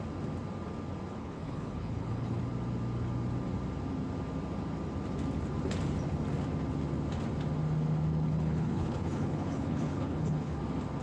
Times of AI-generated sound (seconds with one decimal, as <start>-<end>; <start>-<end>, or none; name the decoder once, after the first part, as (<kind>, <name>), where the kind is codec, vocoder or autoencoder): 1.1-2.4 (codec, HILCodec); 8.3-10.6